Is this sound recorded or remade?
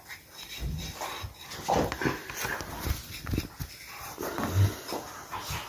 recorded